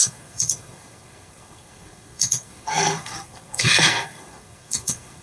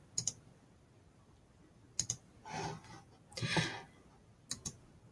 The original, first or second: second